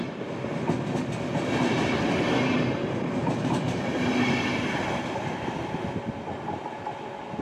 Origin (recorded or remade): recorded